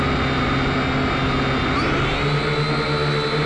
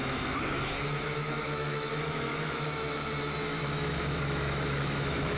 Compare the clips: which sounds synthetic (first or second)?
second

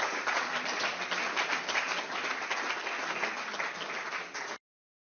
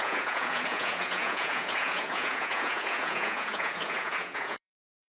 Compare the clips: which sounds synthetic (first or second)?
second